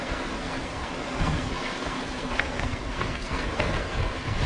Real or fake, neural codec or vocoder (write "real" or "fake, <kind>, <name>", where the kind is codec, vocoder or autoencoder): fake, codec, SNAC